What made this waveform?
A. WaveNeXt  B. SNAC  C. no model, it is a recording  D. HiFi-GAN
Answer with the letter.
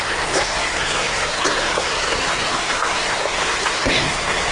B